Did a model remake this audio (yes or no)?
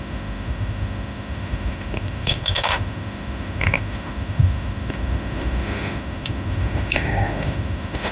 yes